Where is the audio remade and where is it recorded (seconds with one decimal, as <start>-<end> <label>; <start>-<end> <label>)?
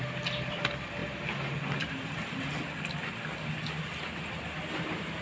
0.0-5.2 recorded